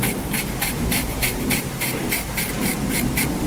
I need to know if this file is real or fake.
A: fake